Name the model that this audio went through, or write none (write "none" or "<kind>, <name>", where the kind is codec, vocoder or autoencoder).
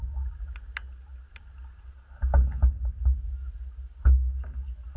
none